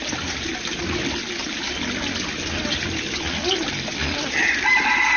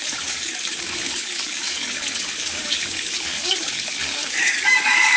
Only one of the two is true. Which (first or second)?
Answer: first